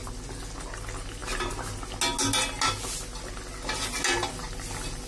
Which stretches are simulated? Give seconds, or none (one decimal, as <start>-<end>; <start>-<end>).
none